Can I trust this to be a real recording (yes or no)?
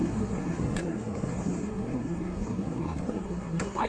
no